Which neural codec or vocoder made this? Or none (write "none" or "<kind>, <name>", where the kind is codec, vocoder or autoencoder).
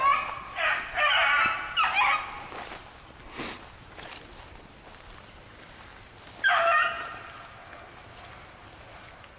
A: none